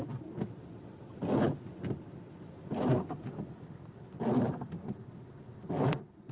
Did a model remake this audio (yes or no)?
yes